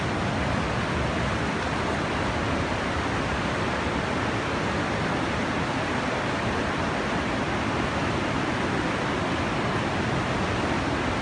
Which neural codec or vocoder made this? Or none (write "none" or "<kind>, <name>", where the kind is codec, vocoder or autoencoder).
none